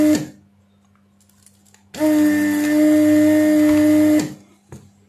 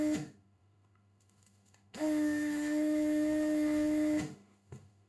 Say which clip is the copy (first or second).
second